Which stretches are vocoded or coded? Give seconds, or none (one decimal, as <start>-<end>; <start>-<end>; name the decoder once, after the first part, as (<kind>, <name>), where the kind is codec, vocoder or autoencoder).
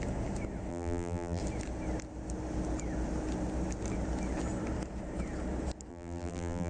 0.7-1.4 (vocoder, BigVGAN v2); 5.9-6.7